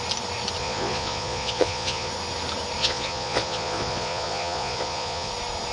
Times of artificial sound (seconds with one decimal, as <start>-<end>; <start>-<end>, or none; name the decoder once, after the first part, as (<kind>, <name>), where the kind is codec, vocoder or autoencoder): 0.6-2.1 (vocoder, Vocos); 2.8-5.3